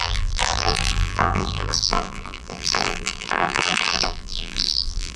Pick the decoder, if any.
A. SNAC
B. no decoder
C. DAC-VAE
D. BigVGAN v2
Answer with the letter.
D